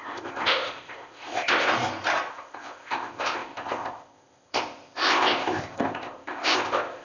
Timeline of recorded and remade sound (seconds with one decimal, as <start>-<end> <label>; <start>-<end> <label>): 0.0-1.7 remade; 1.7-2.3 recorded; 2.3-7.0 remade